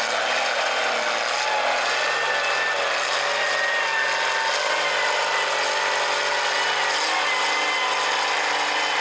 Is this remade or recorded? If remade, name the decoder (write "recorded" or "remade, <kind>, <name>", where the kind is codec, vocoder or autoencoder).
recorded